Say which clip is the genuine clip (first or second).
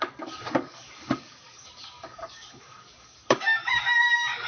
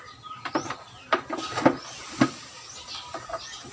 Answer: second